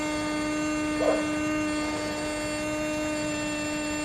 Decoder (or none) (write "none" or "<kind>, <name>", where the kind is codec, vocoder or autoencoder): none